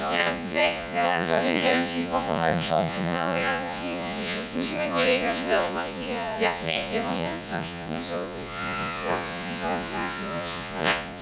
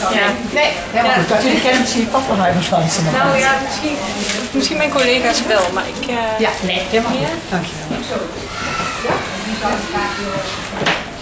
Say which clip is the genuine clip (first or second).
second